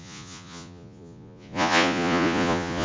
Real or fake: fake